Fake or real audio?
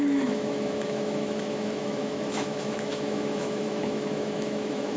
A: fake